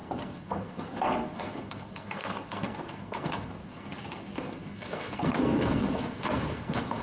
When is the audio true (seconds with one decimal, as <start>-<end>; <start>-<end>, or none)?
none

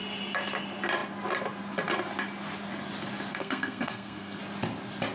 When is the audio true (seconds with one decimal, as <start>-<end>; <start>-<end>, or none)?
0.0-3.3; 4.4-5.1

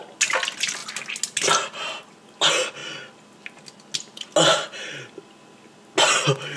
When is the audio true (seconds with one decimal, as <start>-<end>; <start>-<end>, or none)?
0.0-6.6

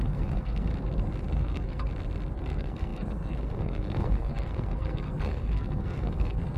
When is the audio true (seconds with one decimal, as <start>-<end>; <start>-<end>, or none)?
0.7-1.3; 1.9-2.4

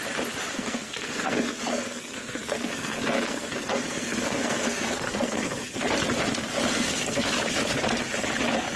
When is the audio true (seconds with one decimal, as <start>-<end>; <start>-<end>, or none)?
0.0-0.5; 5.8-6.7; 7.3-8.8

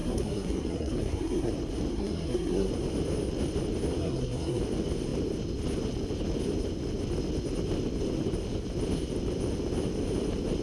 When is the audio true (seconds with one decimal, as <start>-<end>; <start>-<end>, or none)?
1.5-1.9; 2.7-4.0; 4.6-10.6

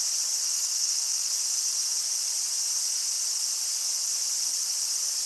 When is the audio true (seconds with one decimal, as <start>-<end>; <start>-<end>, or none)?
0.0-0.4; 1.3-5.3